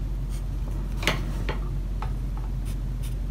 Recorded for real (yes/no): yes